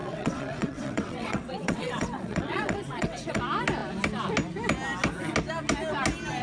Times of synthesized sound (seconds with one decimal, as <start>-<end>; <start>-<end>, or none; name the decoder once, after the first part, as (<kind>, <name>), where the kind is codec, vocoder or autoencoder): 0.0-3.4 (vocoder, WaveNeXt)